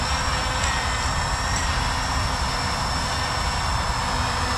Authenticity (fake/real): real